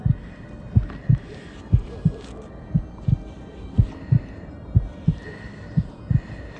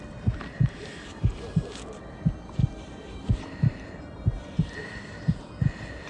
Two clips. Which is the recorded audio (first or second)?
first